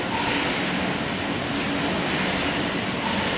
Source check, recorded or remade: recorded